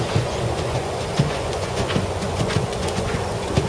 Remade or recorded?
remade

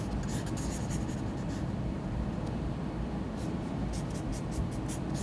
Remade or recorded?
recorded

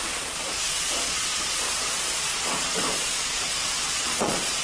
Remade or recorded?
remade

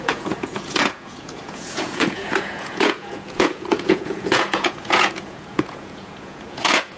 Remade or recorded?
remade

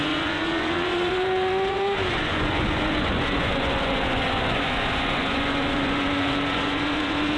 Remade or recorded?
remade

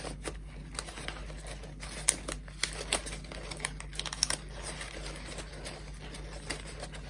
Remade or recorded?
recorded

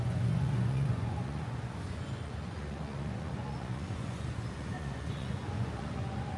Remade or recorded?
remade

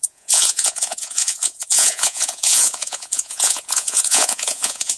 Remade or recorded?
remade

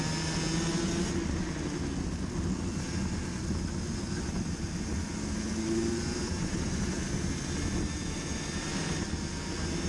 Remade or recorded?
recorded